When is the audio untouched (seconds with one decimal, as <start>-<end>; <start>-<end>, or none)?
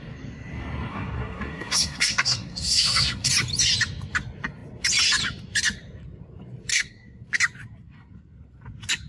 0.0-0.9; 3.3-6.7; 7.2-9.1